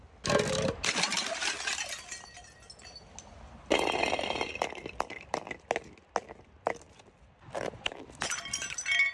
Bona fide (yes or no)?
yes